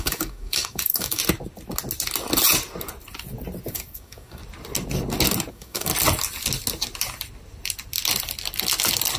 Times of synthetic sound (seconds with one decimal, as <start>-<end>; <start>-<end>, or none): 0.0-1.2; 3.7-4.4; 5.5-5.9